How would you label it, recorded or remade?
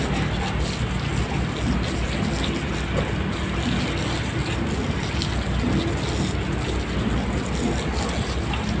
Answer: recorded